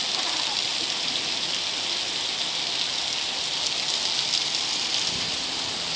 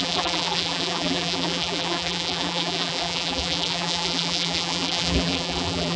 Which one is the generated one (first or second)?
second